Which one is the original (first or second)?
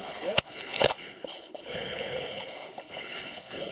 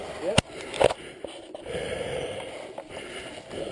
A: second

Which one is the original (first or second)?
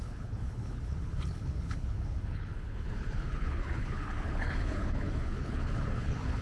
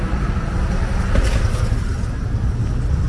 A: second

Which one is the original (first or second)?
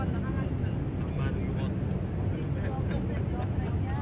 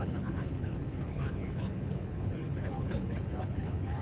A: first